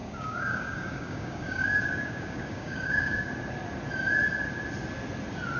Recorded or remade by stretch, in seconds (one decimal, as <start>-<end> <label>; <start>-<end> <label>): 0.0-3.3 remade; 3.3-5.6 recorded